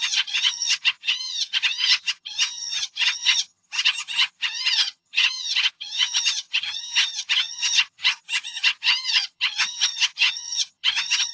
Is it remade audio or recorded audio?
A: remade